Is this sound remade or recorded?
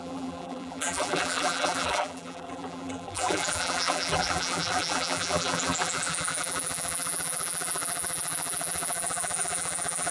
remade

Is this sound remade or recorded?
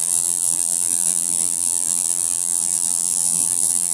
remade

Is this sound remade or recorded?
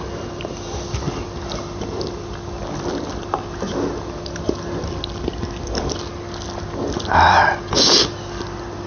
recorded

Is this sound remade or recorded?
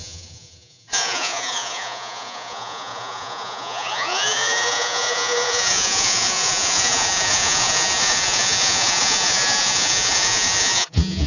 remade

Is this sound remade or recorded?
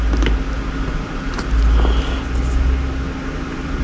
recorded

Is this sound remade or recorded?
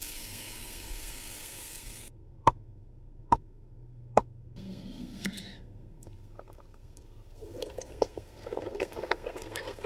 remade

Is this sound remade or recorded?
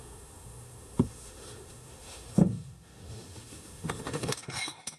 remade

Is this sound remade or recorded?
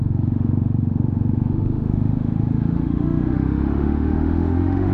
remade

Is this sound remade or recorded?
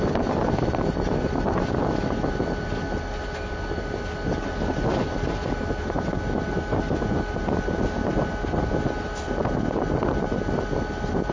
recorded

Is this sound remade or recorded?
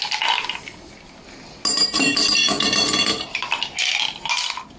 recorded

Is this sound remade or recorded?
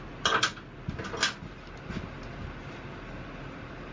recorded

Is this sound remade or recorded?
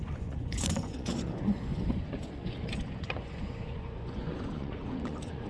remade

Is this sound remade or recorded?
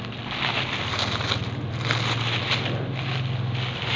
recorded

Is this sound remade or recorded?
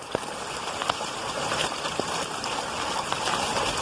recorded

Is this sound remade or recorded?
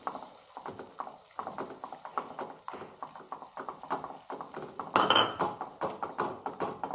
recorded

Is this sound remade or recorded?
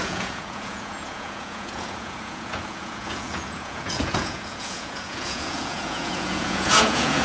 remade